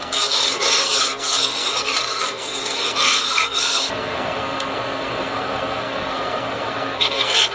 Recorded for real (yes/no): no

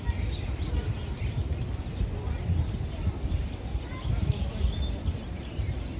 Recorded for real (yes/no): yes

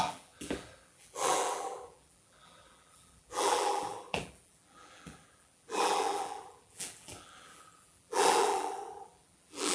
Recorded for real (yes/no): no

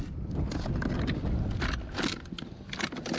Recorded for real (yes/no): yes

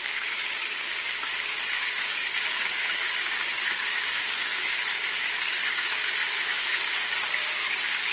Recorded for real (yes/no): no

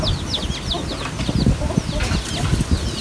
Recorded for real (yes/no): yes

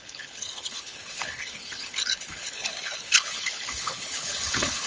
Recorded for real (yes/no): no